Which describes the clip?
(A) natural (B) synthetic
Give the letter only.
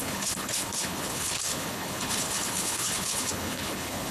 B